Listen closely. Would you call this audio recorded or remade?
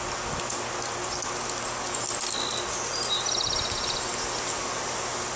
recorded